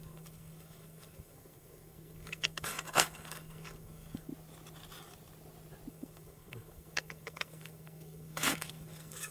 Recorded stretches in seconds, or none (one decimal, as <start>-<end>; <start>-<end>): 4.3-5.9